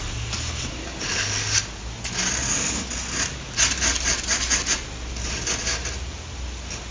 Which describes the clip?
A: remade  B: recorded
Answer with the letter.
B